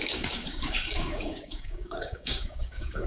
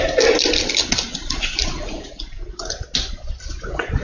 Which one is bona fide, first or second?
second